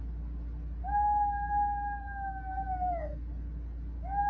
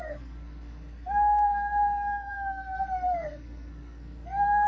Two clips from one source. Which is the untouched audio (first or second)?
first